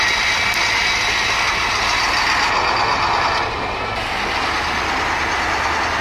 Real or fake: real